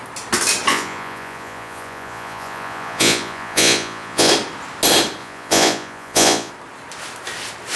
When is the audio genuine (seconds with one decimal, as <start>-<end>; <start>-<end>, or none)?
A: 0.0-0.7; 4.3-5.2; 6.5-7.8